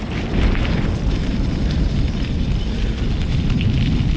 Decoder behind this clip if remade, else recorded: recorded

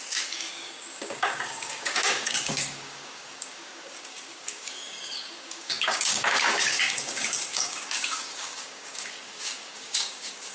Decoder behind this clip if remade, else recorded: remade, codec, DAC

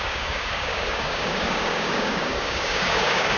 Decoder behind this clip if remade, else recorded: remade, codec, DAC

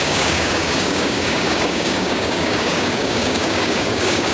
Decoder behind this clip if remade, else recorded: remade, codec, DAC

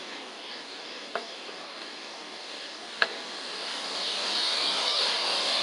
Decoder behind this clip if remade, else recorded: remade, codec, DAC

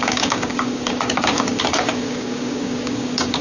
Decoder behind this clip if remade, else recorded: remade, codec, DAC